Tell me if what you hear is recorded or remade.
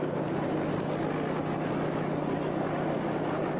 recorded